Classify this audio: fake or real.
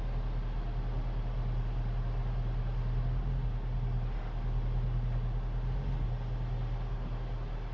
real